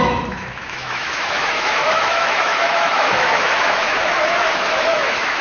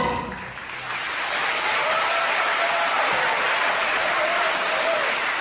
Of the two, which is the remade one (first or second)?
first